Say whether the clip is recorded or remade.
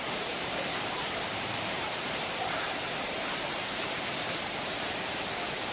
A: remade